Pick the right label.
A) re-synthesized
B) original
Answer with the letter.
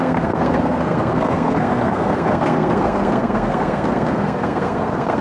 A